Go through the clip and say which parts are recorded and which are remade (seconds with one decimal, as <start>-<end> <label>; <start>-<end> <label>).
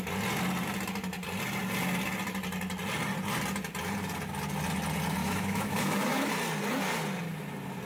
0.0-5.2 recorded; 5.2-6.3 remade; 6.3-7.9 recorded